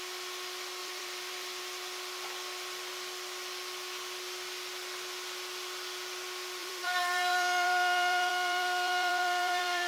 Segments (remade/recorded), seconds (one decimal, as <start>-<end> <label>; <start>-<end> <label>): 0.0-0.8 recorded; 0.8-1.6 remade; 1.6-6.6 recorded; 6.6-9.9 remade